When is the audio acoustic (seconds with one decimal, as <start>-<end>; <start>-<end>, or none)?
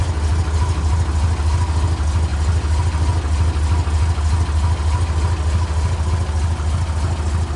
0.0-7.6